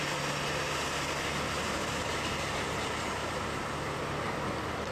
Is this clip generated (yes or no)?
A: no